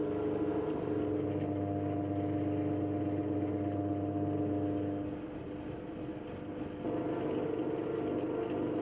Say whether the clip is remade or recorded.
recorded